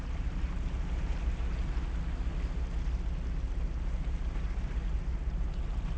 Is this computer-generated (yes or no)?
no